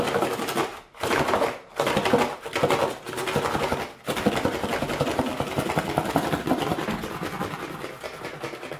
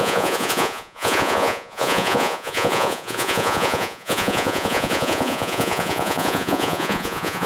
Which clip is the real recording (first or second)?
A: first